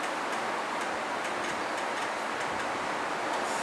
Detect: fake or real real